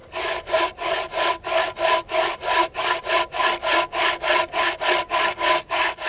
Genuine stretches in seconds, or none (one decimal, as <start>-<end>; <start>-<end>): 3.1-6.1